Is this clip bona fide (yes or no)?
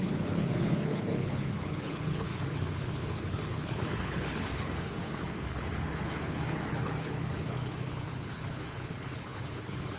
no